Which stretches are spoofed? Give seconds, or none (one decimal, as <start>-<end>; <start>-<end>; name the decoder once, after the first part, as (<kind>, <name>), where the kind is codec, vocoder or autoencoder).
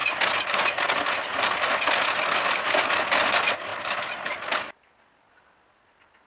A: none